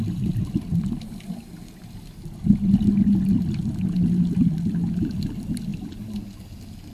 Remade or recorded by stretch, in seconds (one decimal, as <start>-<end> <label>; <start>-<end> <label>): 0.0-6.9 recorded